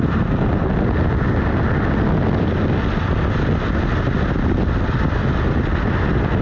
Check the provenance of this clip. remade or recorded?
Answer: recorded